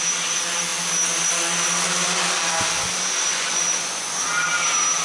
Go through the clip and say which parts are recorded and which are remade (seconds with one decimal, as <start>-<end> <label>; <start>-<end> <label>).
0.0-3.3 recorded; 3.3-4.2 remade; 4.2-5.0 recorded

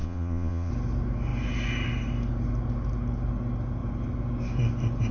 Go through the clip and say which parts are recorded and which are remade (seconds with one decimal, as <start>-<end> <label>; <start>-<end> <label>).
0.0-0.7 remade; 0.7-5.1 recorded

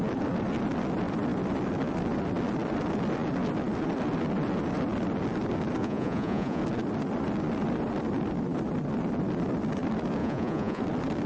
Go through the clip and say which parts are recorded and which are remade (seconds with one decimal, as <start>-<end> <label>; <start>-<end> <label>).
0.0-5.8 recorded; 5.8-6.6 remade; 6.6-10.2 recorded; 10.2-10.8 remade; 10.8-11.3 recorded

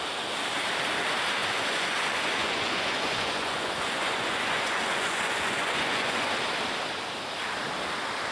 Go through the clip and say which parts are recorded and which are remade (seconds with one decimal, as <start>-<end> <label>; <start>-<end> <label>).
0.0-1.4 recorded; 1.4-6.3 remade; 6.3-8.3 recorded

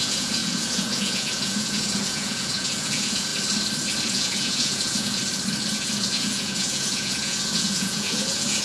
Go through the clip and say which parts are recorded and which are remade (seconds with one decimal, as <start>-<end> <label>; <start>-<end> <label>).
0.0-3.3 remade; 3.3-4.1 recorded; 4.1-5.2 remade; 5.2-5.7 recorded; 5.7-8.6 remade

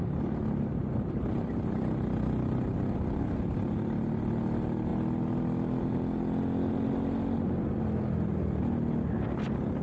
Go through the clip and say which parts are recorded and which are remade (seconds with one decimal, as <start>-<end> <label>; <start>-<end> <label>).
0.0-9.8 recorded

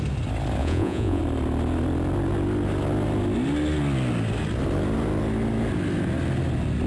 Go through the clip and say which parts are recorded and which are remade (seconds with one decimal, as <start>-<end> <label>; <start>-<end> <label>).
0.0-0.6 recorded; 0.6-1.2 remade; 1.2-6.9 recorded

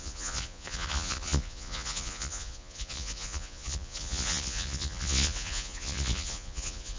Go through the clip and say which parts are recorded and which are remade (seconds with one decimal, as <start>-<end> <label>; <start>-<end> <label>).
0.0-7.0 remade